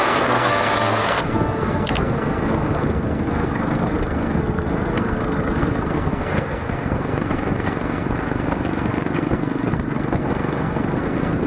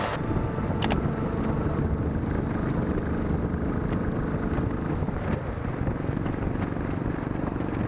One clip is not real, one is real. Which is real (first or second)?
second